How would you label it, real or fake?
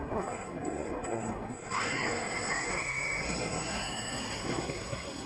fake